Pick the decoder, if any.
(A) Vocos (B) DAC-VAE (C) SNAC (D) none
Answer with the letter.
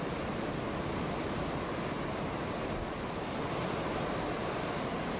D